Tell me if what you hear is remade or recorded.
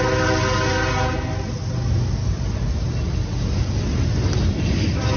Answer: recorded